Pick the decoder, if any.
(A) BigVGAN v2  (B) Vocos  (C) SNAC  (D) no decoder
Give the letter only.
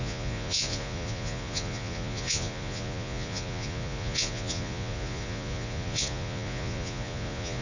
B